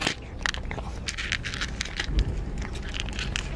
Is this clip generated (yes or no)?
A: no